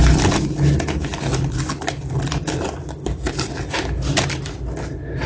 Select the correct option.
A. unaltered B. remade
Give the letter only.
A